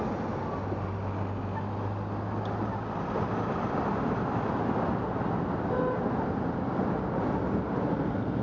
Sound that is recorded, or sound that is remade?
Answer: recorded